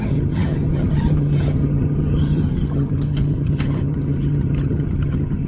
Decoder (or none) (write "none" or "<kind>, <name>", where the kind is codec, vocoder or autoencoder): vocoder, HiFi-GAN